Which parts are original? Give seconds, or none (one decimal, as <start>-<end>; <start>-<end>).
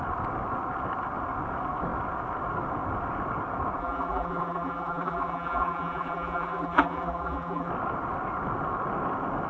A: 0.0-3.8; 7.7-9.5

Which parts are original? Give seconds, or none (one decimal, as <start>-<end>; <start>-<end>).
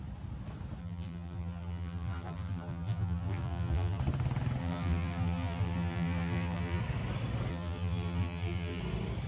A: 0.0-0.8; 4.0-4.6; 6.8-7.5; 8.8-9.3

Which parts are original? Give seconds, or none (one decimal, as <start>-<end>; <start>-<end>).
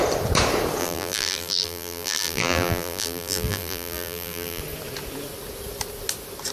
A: 0.0-0.8; 4.6-6.5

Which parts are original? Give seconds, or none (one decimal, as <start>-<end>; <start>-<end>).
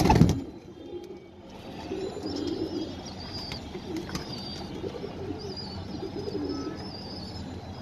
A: 0.0-7.8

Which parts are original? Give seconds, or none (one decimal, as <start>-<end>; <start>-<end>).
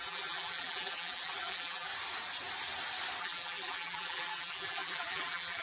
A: 1.9-3.2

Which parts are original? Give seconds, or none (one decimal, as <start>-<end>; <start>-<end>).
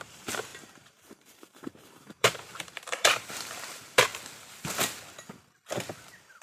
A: 4.1-6.4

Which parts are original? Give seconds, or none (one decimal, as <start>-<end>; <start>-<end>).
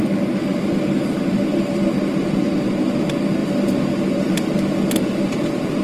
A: 0.0-0.5; 2.1-3.4; 4.6-5.8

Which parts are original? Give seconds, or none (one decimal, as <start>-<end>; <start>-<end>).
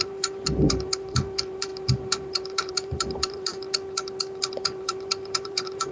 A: 3.5-4.5